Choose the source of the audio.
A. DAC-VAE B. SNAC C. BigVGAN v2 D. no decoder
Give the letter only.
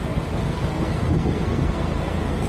B